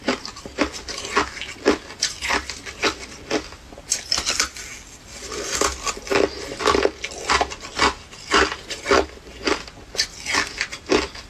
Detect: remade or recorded recorded